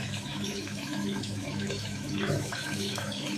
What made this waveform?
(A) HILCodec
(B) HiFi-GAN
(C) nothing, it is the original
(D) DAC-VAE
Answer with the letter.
D